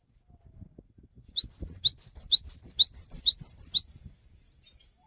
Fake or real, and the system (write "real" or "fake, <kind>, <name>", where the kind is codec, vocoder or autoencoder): real